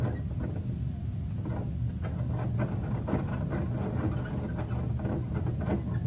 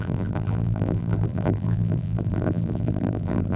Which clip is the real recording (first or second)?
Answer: first